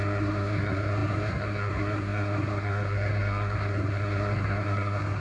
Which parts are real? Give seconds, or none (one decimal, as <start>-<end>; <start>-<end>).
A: none